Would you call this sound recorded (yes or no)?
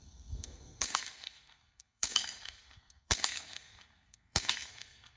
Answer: no